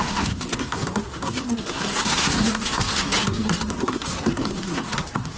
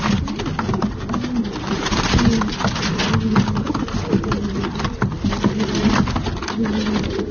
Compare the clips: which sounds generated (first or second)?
first